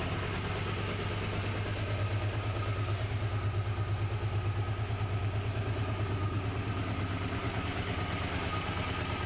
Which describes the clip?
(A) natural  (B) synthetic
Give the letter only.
A